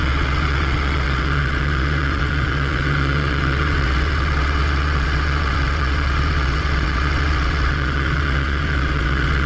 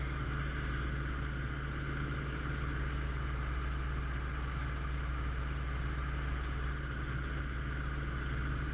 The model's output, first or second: first